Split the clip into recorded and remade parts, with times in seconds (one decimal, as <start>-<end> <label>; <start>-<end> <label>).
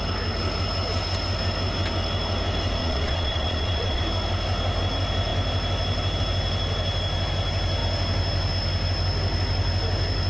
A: 0.0-2.8 recorded; 2.8-4.0 remade; 4.0-10.3 recorded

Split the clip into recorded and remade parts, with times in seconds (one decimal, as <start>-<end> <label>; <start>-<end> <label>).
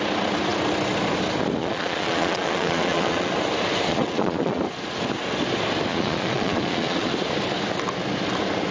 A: 0.0-1.6 recorded; 1.6-3.3 remade; 3.3-3.9 recorded; 3.9-4.6 remade; 4.6-5.9 recorded; 5.9-7.1 remade; 7.1-8.7 recorded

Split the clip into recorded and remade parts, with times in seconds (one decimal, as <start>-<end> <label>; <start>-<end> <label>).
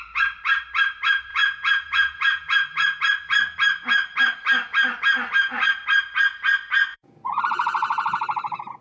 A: 0.0-1.3 recorded; 1.3-3.0 remade; 3.0-6.9 recorded; 6.9-7.4 remade; 7.4-8.8 recorded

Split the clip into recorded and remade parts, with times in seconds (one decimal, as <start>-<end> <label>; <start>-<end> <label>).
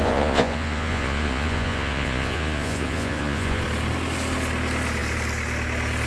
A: 0.0-3.6 remade; 3.6-6.1 recorded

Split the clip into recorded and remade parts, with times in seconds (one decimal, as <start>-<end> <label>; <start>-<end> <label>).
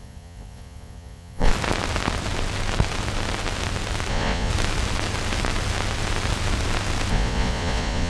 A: 0.0-1.5 remade; 1.5-4.1 recorded; 4.1-4.5 remade; 4.5-7.1 recorded; 7.1-8.1 remade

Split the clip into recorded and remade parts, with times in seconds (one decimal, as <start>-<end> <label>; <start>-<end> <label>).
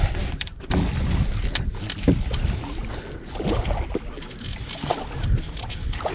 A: 0.0-6.1 recorded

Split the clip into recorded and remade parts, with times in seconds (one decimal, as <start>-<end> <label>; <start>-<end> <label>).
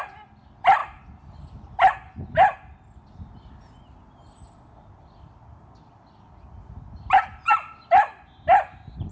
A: 0.0-9.1 recorded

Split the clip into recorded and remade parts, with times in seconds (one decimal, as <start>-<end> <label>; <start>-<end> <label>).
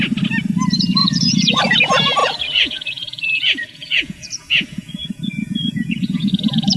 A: 0.0-1.0 recorded; 1.0-1.6 remade; 1.6-2.2 recorded; 2.2-6.3 remade; 6.3-6.8 recorded